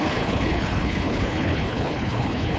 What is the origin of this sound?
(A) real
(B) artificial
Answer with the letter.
B